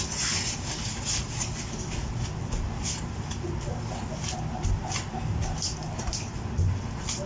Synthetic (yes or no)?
no